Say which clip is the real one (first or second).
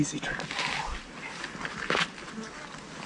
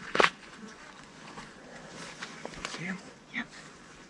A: first